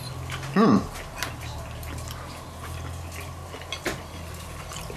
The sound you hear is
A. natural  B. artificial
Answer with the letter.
A